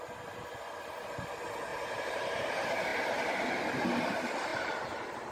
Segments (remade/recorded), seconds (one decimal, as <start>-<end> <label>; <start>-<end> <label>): 0.0-1.7 recorded; 1.7-2.5 remade; 2.5-4.5 recorded; 4.5-5.3 remade